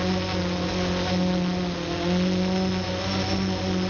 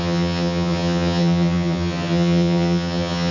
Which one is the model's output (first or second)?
second